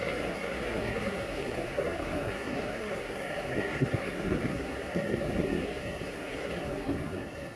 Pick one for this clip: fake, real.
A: fake